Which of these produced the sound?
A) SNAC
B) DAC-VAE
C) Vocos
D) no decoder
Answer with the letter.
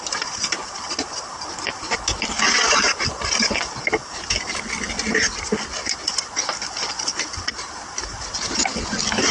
D